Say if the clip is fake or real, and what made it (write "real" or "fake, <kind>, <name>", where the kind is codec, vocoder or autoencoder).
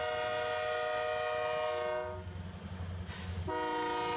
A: real